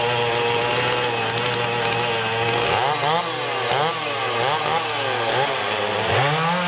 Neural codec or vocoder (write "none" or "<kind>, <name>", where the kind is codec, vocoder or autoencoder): none